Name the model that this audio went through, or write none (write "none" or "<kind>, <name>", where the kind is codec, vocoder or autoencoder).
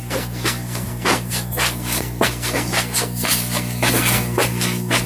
codec, SNAC